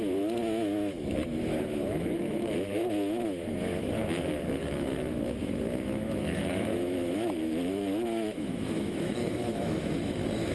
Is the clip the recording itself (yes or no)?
no